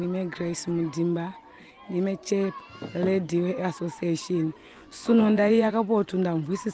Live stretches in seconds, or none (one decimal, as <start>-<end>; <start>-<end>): 0.0-4.6; 5.7-6.7